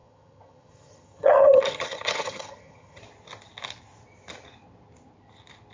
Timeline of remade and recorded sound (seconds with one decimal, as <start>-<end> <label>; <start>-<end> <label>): 0.0-3.0 remade; 3.0-5.7 recorded